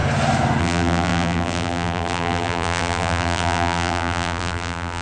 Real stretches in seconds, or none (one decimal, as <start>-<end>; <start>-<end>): 0.0-0.6